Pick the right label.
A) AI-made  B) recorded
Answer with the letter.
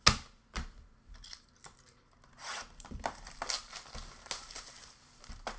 B